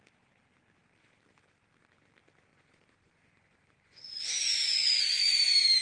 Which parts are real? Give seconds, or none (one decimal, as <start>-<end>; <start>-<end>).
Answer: 0.0-2.5; 5.0-5.8